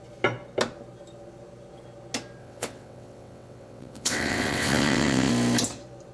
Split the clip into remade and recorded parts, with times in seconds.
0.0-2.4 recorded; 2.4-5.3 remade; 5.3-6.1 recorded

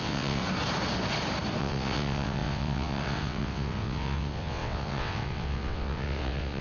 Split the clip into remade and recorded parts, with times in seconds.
0.0-0.4 remade; 0.4-1.6 recorded; 1.6-6.6 remade

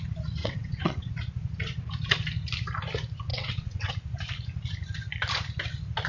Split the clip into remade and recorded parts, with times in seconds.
0.0-0.4 recorded; 0.4-1.1 remade; 1.1-3.3 recorded; 3.3-3.9 remade; 3.9-6.1 recorded

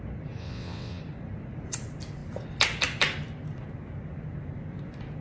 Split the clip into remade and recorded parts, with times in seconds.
0.0-0.4 recorded; 0.4-1.0 remade; 1.0-5.2 recorded

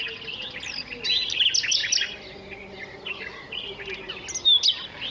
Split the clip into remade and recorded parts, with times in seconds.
0.0-5.1 recorded